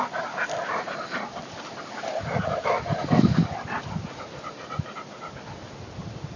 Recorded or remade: recorded